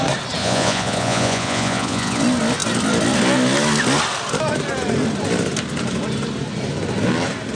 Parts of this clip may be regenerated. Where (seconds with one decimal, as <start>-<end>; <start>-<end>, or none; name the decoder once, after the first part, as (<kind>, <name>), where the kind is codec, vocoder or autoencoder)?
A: 0.4-2.2 (vocoder, Vocos)